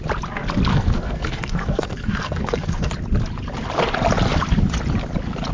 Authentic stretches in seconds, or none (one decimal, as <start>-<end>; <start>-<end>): 0.0-0.7; 2.9-5.5

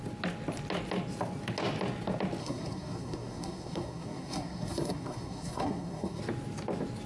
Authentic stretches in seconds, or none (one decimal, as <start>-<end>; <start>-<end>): 0.0-2.4; 6.2-7.1

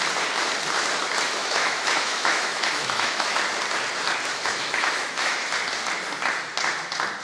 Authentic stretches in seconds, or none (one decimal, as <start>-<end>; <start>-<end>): 0.0-1.4; 3.4-4.4; 5.5-7.2